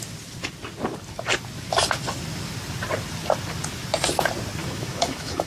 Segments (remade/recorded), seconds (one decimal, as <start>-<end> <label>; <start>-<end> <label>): 0.0-4.6 recorded; 4.6-5.5 remade